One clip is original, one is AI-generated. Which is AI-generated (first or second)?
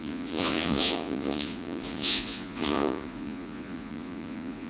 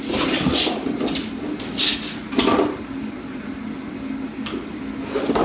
first